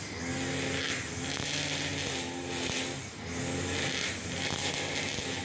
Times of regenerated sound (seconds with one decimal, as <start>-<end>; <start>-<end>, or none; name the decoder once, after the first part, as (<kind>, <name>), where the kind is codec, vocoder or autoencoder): none